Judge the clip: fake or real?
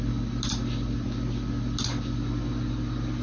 real